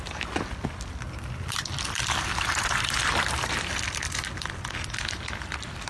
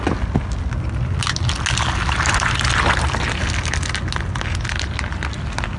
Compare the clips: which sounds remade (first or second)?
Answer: first